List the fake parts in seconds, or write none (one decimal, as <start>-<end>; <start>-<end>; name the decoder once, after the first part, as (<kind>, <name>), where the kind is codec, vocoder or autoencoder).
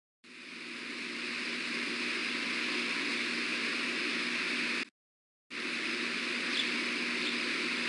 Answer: 0.0-0.7 (vocoder, BigVGAN v2)